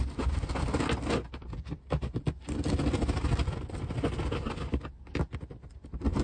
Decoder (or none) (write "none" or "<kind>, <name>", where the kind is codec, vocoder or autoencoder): none